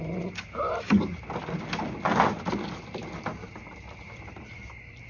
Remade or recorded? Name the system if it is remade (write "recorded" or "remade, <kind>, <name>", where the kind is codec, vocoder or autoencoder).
recorded